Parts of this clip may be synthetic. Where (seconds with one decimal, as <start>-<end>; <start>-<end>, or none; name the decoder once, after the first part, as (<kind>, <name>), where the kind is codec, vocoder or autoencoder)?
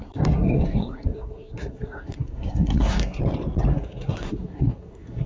0.0-3.2 (codec, SNAC); 3.7-5.3